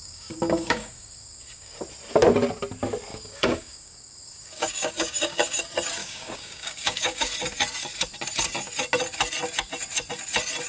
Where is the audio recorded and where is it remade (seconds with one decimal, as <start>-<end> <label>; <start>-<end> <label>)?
0.0-1.8 remade; 1.8-3.1 recorded; 3.1-5.6 remade; 5.6-6.0 recorded; 6.0-7.3 remade; 7.3-10.7 recorded